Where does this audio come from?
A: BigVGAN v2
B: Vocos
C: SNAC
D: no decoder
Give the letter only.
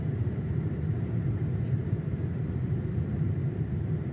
A